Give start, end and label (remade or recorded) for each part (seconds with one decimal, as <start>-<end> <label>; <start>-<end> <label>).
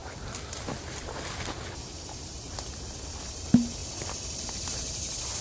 0.0-5.4 recorded